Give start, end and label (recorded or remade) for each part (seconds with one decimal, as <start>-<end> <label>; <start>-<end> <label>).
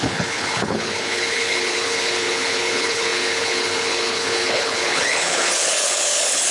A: 0.0-6.5 remade